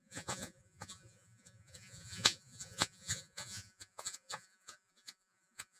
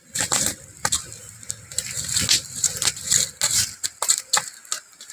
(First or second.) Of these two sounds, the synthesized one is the first